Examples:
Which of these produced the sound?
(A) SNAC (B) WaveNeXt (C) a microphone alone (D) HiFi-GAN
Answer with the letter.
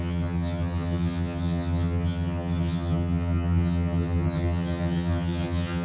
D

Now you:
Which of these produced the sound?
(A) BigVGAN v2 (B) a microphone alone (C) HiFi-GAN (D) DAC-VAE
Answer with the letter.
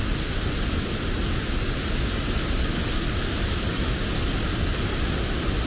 B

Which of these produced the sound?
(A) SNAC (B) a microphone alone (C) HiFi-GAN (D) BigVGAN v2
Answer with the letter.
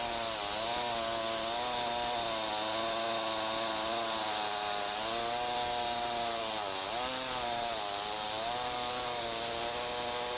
B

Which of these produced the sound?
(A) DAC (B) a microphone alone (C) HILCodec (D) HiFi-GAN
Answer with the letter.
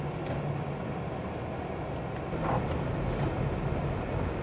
B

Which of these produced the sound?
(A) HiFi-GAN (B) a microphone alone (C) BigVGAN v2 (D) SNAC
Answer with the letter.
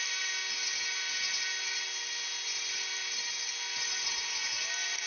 B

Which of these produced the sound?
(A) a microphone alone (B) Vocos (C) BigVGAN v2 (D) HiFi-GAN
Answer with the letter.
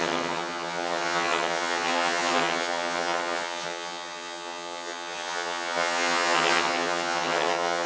D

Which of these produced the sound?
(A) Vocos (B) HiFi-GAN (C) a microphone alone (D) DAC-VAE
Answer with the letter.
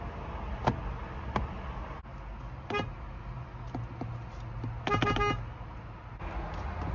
C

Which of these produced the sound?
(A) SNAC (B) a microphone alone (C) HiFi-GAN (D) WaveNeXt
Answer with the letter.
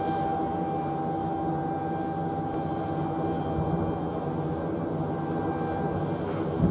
B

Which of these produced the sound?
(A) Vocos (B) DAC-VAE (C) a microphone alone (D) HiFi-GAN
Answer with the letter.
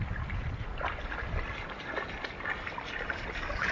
C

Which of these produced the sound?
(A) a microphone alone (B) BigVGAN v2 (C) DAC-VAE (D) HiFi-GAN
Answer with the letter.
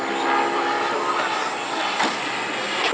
A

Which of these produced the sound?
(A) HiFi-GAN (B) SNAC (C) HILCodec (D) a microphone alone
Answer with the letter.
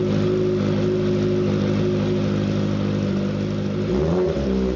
D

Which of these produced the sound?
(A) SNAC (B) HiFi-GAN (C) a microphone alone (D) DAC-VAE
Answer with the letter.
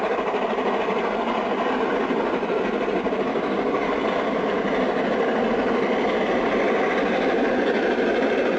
C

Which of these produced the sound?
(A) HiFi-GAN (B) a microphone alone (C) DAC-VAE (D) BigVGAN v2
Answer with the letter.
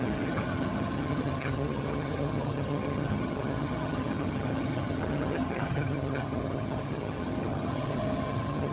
A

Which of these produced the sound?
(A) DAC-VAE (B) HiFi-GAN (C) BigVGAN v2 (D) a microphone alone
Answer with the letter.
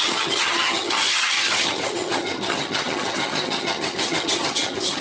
B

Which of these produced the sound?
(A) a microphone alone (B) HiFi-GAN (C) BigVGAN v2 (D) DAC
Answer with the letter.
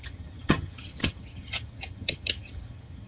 B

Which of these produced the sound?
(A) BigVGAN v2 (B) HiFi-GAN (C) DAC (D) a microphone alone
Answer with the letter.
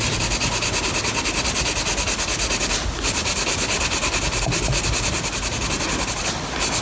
D